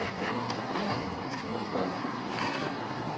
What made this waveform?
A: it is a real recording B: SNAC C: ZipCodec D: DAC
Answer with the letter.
B